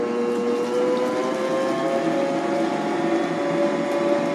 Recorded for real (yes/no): yes